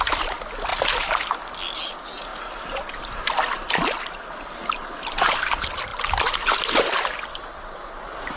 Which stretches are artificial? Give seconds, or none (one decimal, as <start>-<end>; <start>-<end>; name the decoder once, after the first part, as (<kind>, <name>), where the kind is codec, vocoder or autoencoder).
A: none